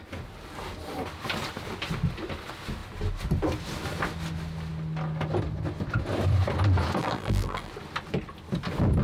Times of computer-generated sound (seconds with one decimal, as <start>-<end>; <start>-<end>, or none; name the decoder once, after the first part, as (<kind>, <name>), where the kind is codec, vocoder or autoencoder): 7.0-7.7 (vocoder, BigVGAN v2)